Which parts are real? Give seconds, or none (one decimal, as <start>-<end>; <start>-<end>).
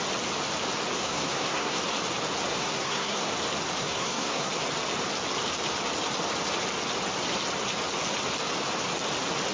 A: 0.0-1.0; 1.8-2.5; 3.3-3.8; 4.5-9.5